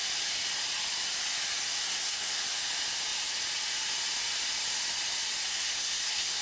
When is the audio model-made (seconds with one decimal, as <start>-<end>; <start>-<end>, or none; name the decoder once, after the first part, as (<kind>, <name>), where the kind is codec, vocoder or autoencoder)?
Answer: 1.6-2.4 (codec, SNAC); 5.4-6.4